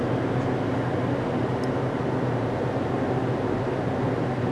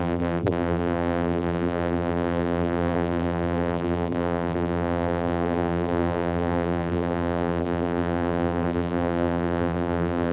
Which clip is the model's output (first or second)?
second